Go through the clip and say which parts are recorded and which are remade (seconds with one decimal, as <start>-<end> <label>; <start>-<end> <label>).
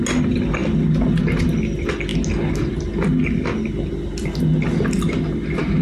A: 0.0-5.8 recorded